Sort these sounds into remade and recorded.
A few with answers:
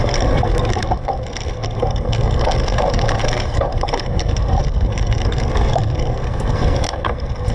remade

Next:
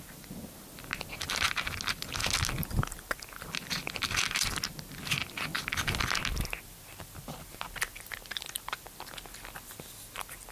recorded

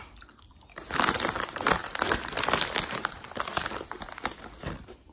remade